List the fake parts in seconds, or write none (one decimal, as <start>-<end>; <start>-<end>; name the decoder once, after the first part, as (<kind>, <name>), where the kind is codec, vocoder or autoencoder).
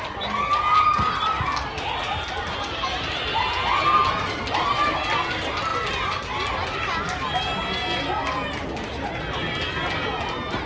none